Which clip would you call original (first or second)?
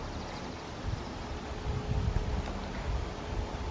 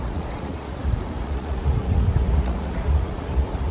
first